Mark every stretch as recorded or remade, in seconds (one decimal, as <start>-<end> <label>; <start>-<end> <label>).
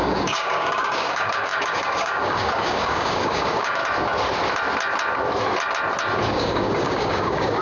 0.0-3.8 remade; 3.8-6.3 recorded; 6.3-7.6 remade